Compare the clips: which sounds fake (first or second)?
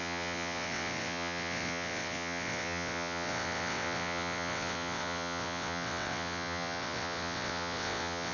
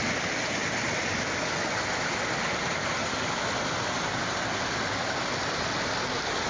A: first